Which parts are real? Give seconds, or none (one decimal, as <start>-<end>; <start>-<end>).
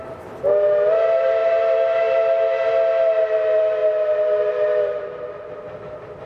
0.0-6.3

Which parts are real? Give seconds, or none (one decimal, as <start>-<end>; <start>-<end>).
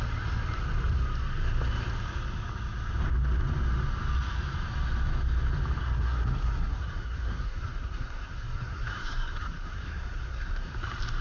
0.0-5.8; 10.7-11.2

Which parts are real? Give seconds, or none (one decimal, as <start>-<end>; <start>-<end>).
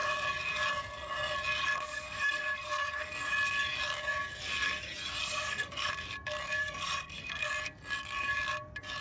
0.0-1.6; 3.1-5.2; 5.9-6.6; 7.5-9.0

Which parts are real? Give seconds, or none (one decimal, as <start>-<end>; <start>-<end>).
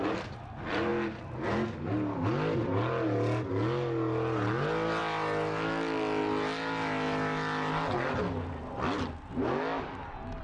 0.0-10.4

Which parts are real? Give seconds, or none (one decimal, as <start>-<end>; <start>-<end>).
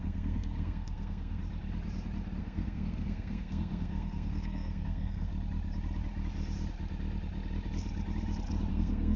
1.4-2.4; 5.3-8.7